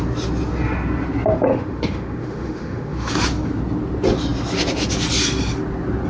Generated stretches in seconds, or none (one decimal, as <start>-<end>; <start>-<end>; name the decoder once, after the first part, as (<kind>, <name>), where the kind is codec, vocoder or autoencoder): 1.5-3.1 (autoencoder, DAC-VAE)